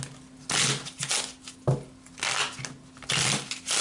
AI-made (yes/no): no